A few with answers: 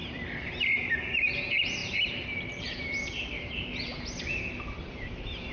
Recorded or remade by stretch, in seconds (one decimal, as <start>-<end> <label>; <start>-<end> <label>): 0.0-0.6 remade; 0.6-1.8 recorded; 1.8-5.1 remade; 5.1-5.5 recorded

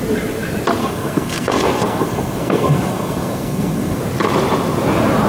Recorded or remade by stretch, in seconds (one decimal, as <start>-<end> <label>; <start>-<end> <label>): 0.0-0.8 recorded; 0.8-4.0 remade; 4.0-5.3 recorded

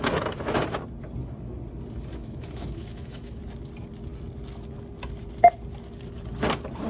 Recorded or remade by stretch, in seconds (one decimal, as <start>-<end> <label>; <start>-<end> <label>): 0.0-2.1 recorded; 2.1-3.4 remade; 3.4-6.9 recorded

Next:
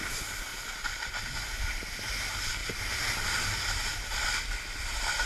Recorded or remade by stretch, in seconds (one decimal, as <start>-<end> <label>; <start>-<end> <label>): 0.0-5.3 recorded

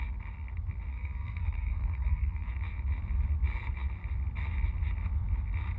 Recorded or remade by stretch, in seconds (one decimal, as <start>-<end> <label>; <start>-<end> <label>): 0.0-0.9 recorded; 0.9-2.5 remade; 2.5-5.8 recorded

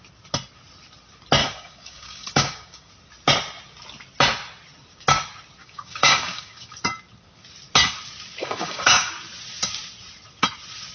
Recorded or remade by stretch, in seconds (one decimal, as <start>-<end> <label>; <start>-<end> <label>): 0.0-1.4 recorded; 1.4-2.9 remade; 2.9-5.6 recorded; 5.6-6.7 remade; 6.7-8.4 recorded; 8.4-9.1 remade; 9.1-10.9 recorded